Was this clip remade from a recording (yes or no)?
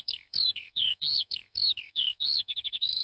yes